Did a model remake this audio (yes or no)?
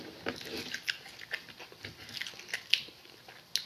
no